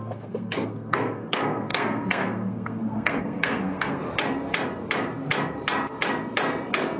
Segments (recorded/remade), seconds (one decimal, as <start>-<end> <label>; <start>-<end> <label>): 0.0-4.0 remade; 4.0-7.0 recorded